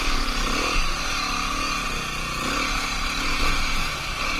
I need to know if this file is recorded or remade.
recorded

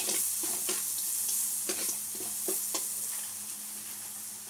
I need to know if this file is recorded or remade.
recorded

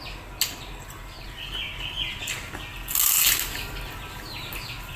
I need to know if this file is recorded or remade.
recorded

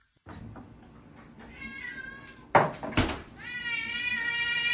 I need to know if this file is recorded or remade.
recorded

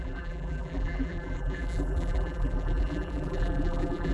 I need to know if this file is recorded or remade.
remade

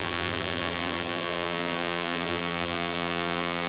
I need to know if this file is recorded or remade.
remade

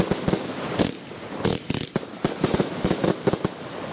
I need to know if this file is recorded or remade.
recorded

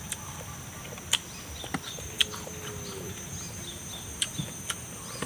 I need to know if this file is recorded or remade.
recorded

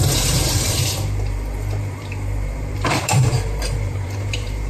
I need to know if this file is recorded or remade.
remade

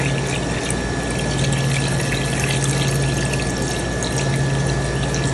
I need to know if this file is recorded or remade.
recorded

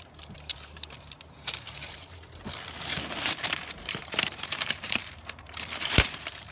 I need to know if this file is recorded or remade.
remade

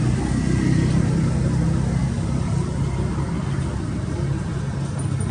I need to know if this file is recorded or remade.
recorded